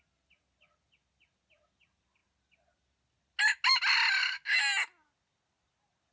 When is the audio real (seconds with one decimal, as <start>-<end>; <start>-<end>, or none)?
0.0-6.1